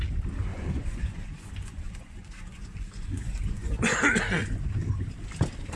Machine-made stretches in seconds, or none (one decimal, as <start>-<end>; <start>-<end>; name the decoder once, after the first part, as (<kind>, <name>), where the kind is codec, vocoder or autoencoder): 0.5-4.0 (vocoder, Vocos)